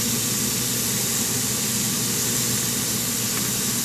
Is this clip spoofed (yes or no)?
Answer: no